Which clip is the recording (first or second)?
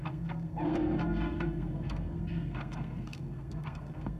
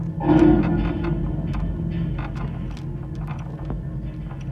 second